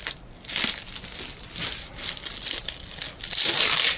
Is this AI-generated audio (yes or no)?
no